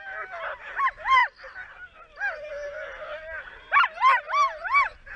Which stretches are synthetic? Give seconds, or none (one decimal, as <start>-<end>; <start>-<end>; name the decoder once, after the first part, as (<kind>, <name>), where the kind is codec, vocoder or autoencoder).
none